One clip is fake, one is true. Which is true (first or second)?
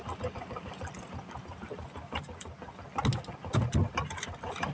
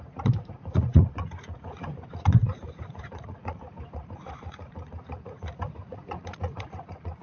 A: first